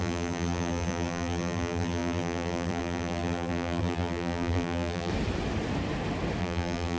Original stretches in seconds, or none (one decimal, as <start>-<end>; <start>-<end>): 5.1-6.4